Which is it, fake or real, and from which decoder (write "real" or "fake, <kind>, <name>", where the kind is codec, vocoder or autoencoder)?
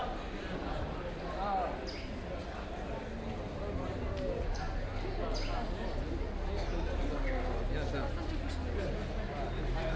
real